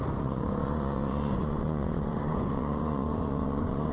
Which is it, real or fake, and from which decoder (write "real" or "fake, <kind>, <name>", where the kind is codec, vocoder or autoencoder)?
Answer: fake, vocoder, Vocos